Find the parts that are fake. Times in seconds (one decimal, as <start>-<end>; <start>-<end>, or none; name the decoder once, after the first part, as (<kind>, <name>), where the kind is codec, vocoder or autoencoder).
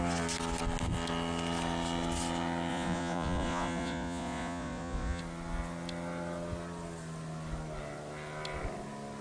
2.7-5.2 (vocoder, Vocos)